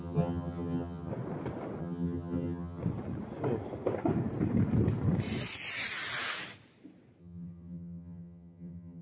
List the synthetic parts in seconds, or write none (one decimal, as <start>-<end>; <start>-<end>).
0.0-1.1; 1.8-2.8; 7.2-9.0